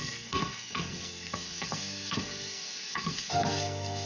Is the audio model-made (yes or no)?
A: yes